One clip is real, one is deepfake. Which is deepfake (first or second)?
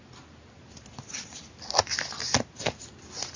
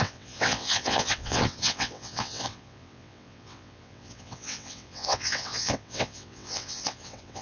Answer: second